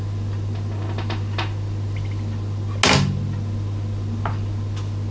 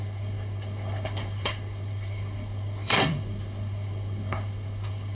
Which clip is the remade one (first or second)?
second